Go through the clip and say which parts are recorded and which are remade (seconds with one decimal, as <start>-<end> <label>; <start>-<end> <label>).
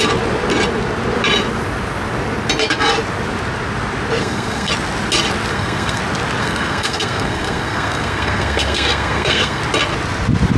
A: 0.0-4.2 recorded; 4.2-4.7 remade; 4.7-5.5 recorded; 5.5-6.0 remade; 6.0-6.4 recorded; 6.4-9.6 remade; 9.6-10.6 recorded